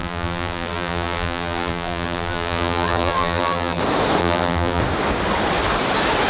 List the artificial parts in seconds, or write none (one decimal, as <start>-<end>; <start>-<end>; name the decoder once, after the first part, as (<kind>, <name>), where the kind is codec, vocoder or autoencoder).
0.0-3.8 (vocoder, BigVGAN v2); 4.2-4.8